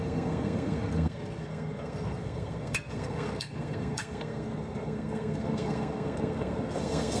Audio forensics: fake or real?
fake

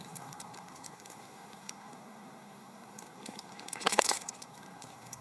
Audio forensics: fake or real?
fake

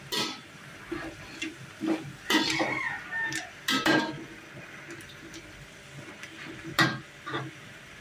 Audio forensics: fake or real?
real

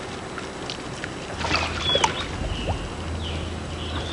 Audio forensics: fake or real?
real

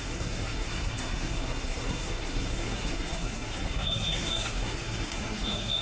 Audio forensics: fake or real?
fake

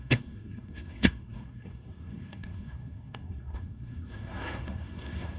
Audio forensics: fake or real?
fake